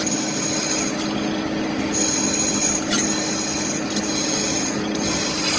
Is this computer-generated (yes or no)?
no